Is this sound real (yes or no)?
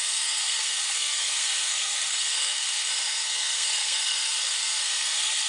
no